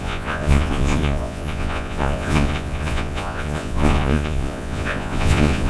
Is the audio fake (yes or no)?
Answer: yes